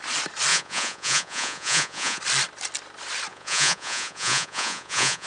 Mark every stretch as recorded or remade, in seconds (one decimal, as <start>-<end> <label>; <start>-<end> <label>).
0.0-0.5 recorded; 0.5-2.2 remade; 2.2-3.3 recorded; 3.3-5.3 remade